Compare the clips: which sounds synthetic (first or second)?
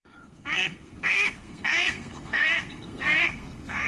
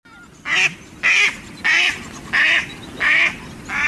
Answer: first